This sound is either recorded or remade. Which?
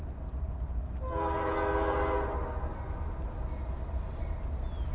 recorded